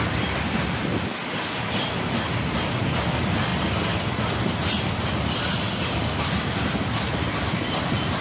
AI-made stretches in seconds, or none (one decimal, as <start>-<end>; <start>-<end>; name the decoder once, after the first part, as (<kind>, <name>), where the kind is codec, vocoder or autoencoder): none